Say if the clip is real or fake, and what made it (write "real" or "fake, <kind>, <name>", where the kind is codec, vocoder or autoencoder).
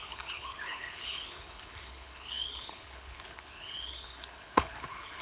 fake, codec, HILCodec